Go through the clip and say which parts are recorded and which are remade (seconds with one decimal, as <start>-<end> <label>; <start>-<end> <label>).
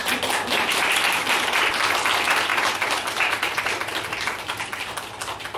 0.0-1.2 remade; 1.2-5.6 recorded